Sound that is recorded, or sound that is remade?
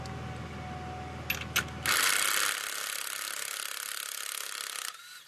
recorded